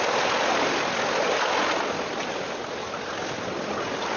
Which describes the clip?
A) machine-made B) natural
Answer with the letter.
B